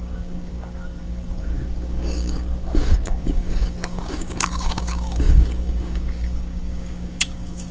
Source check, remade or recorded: remade